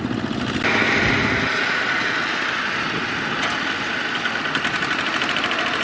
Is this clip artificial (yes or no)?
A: no